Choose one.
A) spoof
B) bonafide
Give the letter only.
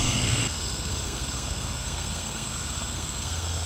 A